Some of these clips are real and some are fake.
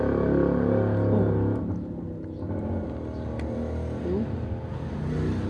real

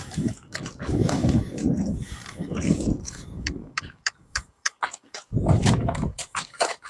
fake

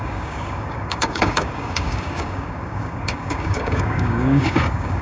fake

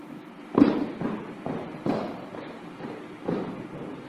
real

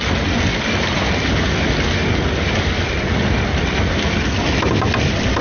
real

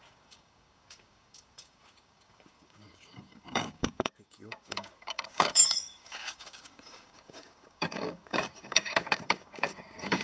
fake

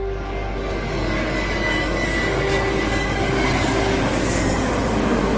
fake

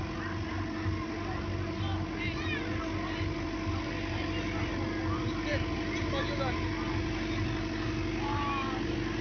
real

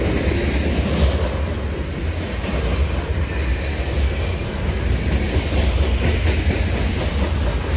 real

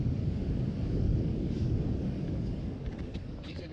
fake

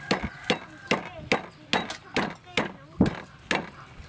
real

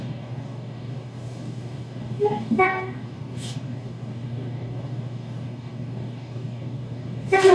fake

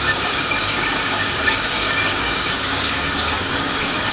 fake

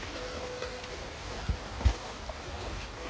fake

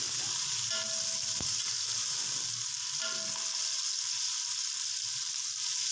real